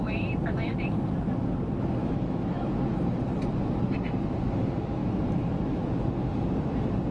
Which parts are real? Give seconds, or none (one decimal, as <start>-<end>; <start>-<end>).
0.0-2.0; 2.7-5.0; 5.8-7.1